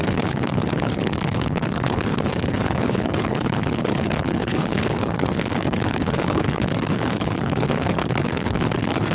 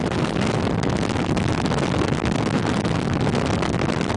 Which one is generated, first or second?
first